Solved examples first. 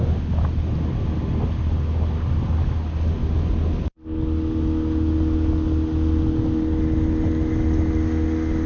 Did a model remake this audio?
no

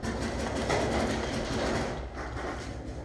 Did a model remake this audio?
no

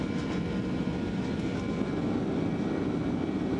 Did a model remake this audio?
no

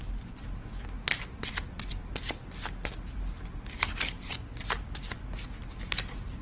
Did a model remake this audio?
no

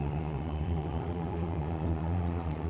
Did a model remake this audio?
yes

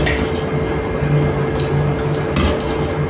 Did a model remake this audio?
no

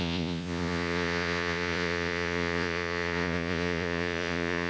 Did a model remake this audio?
yes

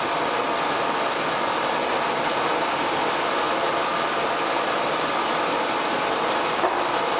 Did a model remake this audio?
no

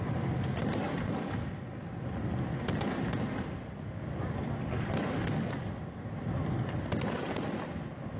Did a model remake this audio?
no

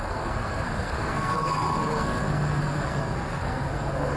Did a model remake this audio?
yes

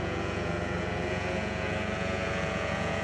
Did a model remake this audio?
yes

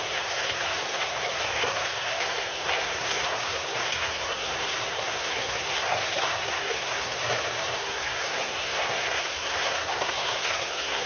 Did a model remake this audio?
yes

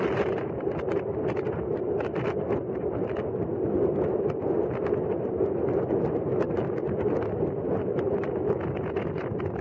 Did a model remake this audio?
no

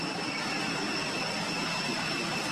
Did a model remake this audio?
no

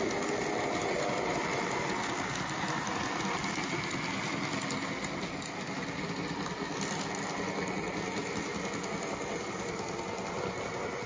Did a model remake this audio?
no